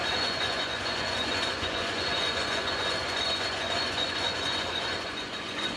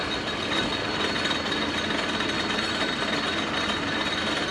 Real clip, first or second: second